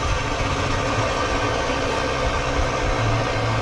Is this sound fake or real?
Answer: real